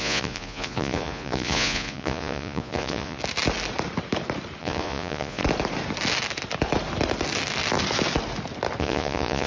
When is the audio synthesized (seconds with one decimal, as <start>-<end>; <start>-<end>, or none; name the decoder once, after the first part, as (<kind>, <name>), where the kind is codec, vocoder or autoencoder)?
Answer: 0.0-3.2 (vocoder, Vocos); 4.6-5.4; 8.8-9.5